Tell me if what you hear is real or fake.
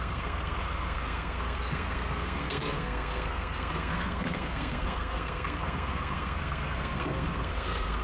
fake